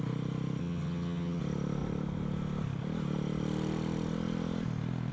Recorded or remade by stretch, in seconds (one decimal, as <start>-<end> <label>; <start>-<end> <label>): 0.0-0.6 recorded; 0.6-1.4 remade; 1.4-5.1 recorded